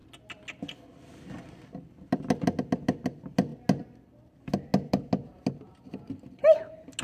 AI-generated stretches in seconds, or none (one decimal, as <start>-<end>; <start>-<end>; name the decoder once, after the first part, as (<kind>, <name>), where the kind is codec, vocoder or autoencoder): none